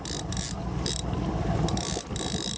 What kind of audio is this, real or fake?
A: real